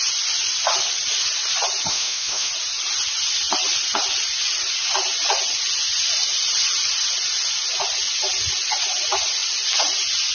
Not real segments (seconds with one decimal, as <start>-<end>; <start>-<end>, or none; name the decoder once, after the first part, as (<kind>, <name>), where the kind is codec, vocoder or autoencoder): 1.9-2.5 (autoencoder, DAC-VAE)